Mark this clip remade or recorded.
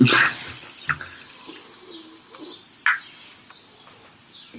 recorded